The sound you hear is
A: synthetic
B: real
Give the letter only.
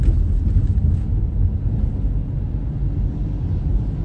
B